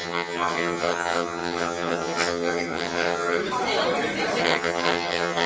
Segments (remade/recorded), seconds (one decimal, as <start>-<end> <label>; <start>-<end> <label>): 0.0-3.4 remade; 3.4-4.4 recorded; 4.4-5.5 remade